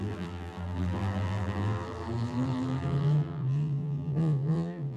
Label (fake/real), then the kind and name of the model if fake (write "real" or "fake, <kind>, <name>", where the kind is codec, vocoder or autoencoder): fake, vocoder, BigVGAN v2